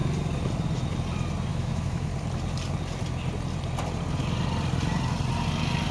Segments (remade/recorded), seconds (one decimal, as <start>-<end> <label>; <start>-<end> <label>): 0.0-1.5 recorded; 1.5-2.1 remade; 2.1-5.9 recorded